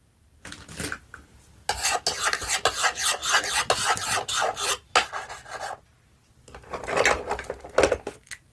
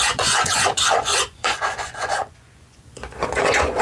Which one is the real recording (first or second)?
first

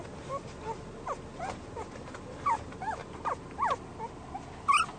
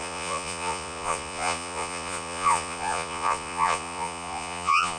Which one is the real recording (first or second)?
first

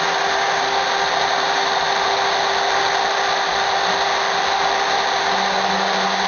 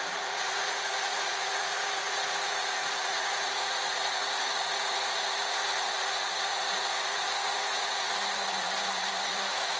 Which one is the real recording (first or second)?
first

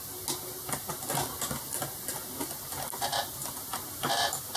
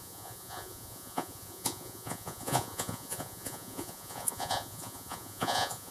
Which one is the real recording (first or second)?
first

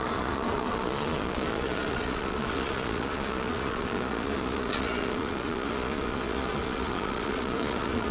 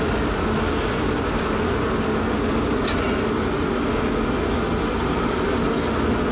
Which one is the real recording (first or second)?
second